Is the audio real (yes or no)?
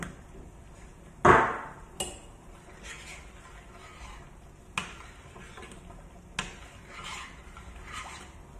yes